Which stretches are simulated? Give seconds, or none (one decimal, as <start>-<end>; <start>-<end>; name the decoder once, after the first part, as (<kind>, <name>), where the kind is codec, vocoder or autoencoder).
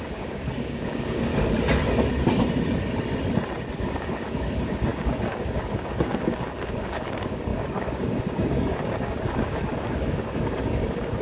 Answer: 0.0-1.3 (codec, DAC); 3.8-11.2